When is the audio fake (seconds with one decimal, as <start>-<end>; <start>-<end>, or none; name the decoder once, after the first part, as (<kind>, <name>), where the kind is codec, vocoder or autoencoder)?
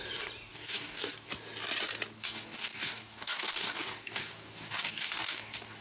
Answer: 0.5-1.1 (codec, DAC); 2.2-5.8